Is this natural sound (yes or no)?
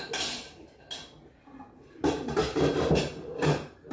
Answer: yes